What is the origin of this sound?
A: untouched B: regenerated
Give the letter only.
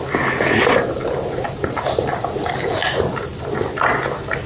A